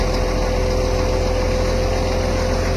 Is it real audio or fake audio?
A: real